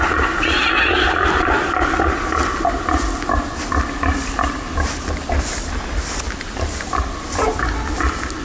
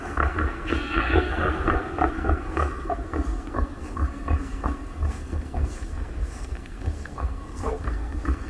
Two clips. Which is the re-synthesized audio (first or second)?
second